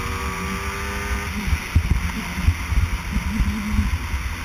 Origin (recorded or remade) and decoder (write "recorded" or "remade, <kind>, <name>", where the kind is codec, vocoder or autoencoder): recorded